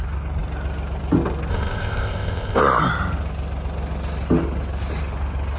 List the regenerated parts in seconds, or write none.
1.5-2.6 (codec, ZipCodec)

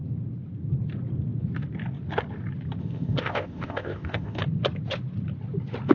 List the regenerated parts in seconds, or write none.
2.8-4.4 (codec, ZipCodec)

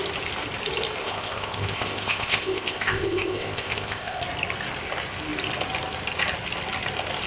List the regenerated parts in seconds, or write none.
1.0-4.2 (codec, ZipCodec)

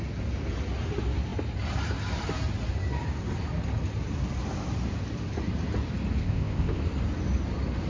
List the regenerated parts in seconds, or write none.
6.2-6.8 (codec, ZipCodec)

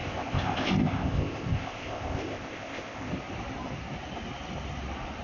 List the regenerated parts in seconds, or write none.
0.0-3.1 (codec, ZipCodec)

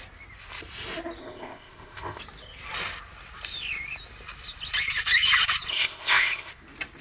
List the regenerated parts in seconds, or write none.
1.2-2.2 (codec, ZipCodec); 5.7-6.5

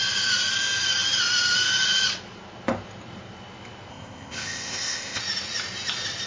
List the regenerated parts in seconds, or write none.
3.9-5.2 (codec, ZipCodec)